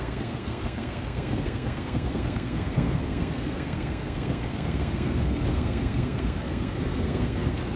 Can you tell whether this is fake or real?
fake